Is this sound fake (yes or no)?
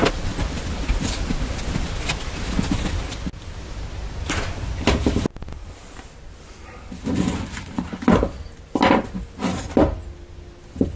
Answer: no